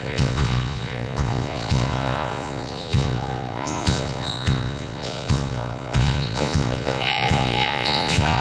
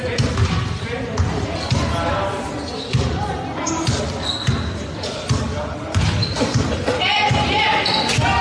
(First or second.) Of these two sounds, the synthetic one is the first